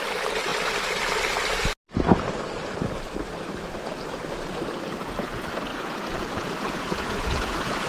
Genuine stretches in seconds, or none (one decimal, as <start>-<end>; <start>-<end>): 0.0-5.7